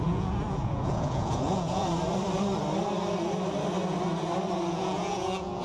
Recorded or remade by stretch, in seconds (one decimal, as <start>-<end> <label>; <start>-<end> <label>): 0.0-1.8 remade; 1.8-4.7 recorded; 4.7-5.6 remade